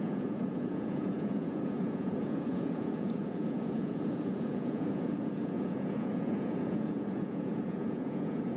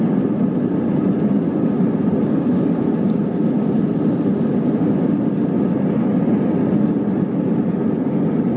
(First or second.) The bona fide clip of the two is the second